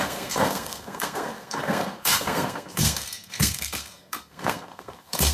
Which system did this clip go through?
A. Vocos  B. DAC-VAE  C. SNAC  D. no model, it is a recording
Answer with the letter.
C